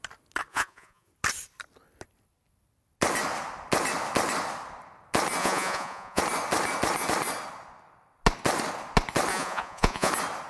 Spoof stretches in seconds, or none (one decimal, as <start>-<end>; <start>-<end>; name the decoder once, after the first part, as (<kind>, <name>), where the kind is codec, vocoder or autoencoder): 0.5-1.1 (vocoder, Vocos); 5.4-6.2; 9.3-10.1